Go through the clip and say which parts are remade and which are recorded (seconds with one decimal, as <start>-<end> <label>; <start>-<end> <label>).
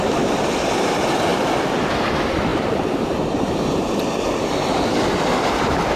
0.0-1.3 remade; 1.3-2.1 recorded; 2.1-6.0 remade